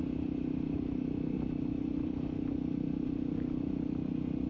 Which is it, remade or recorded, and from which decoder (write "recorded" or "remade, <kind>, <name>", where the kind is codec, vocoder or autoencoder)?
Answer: recorded